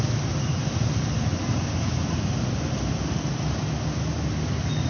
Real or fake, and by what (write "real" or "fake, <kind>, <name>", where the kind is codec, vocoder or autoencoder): real